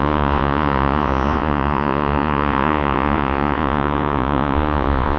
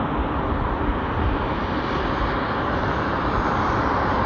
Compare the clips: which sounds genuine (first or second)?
second